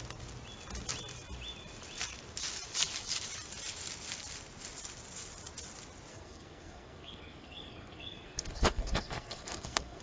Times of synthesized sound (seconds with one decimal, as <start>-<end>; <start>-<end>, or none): 6.1-10.0